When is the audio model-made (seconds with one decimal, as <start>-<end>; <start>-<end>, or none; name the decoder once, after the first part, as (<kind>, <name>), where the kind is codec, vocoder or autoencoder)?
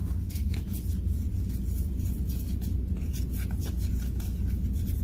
0.0-0.5 (autoencoder, DAC-VAE)